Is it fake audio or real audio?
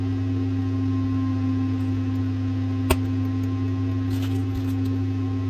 real